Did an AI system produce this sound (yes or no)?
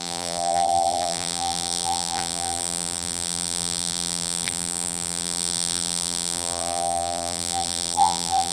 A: yes